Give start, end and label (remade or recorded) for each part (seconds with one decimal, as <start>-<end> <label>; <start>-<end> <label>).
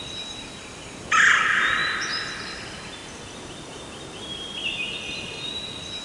0.0-1.8 remade; 1.8-2.5 recorded; 2.5-3.0 remade; 3.0-5.5 recorded; 5.5-6.0 remade